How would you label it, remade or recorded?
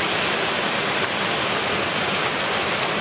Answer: recorded